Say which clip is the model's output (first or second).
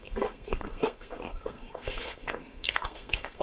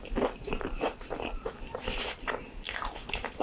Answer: first